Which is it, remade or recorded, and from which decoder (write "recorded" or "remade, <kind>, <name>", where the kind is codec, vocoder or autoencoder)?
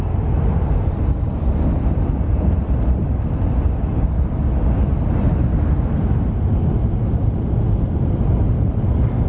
recorded